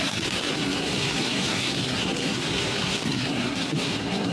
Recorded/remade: remade